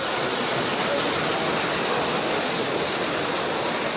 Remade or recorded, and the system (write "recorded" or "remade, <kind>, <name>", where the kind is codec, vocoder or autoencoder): recorded